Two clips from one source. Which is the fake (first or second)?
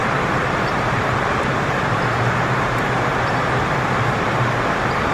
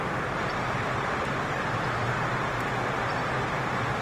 first